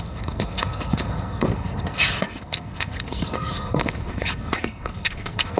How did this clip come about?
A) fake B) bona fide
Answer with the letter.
A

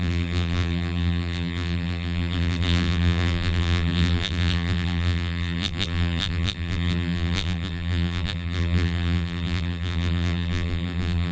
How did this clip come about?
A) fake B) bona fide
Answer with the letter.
A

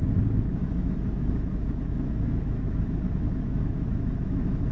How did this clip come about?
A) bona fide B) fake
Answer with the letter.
B